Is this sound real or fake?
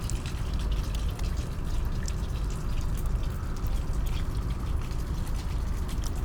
real